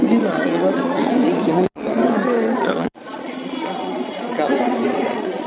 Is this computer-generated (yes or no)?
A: yes